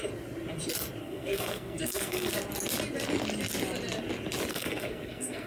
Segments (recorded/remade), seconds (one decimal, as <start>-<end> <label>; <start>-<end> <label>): 0.0-1.0 recorded; 1.0-2.3 remade; 2.3-4.5 recorded; 4.5-5.5 remade